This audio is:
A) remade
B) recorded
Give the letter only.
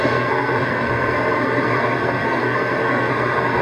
A